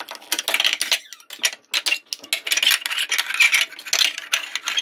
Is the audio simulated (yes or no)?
no